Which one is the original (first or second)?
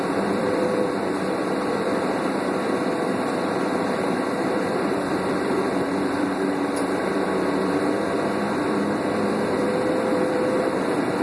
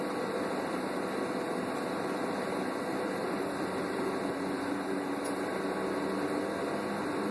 second